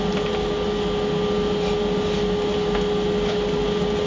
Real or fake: real